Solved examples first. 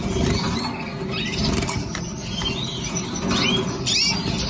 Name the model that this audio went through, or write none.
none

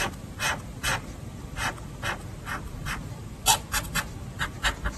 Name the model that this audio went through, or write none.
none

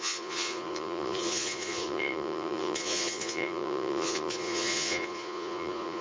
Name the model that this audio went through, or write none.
vocoder, Vocos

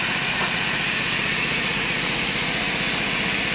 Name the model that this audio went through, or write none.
vocoder, Vocos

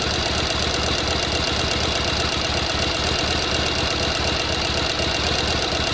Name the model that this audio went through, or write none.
none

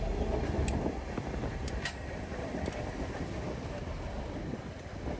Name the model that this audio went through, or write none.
none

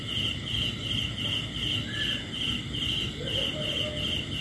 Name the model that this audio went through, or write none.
none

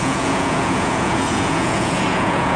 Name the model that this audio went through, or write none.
vocoder, Vocos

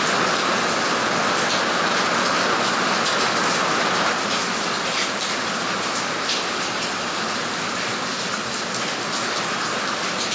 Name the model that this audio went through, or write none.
none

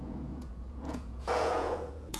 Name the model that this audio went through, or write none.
vocoder, Vocos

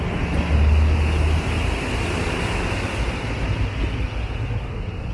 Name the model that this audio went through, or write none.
none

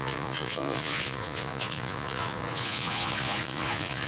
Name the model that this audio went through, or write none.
vocoder, Vocos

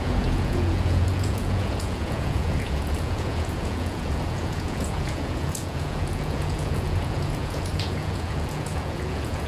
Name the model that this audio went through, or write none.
vocoder, Vocos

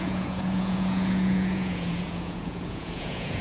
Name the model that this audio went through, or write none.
vocoder, Vocos